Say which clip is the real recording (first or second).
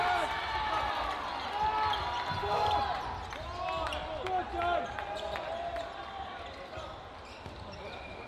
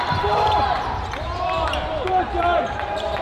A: first